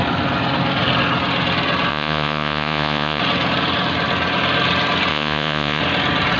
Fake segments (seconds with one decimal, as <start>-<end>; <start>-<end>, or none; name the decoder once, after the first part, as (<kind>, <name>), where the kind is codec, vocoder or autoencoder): 1.9-3.2 (vocoder, Vocos); 5.1-5.8